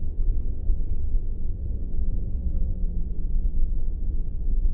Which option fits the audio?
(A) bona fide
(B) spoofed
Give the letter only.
B